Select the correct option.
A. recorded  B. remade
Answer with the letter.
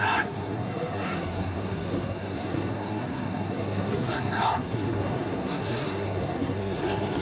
B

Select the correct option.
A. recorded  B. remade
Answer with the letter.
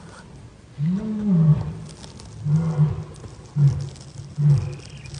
A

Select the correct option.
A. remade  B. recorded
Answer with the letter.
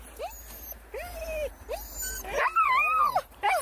B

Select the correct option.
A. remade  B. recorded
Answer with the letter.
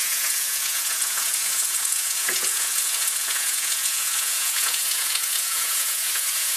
A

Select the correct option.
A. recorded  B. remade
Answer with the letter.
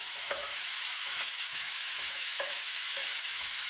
B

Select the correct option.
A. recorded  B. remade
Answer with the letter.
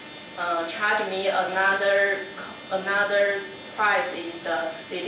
A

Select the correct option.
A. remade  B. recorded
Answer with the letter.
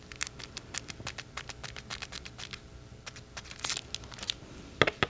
B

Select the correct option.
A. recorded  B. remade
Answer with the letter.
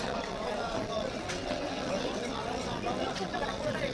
B